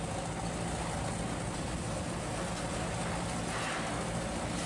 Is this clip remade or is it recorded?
recorded